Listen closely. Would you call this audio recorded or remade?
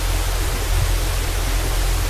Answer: remade